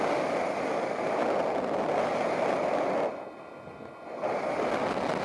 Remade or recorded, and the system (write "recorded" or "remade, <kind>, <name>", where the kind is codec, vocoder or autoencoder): recorded